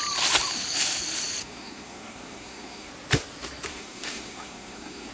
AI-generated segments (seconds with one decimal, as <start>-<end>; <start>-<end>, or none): 1.4-2.9; 3.7-5.1